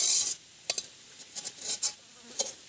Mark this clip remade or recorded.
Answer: recorded